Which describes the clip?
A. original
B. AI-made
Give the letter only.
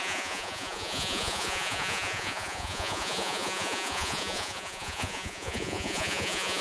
B